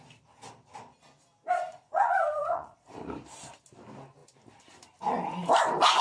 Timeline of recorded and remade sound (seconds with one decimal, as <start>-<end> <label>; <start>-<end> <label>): 0.0-1.7 recorded; 1.7-2.9 remade; 2.9-6.0 recorded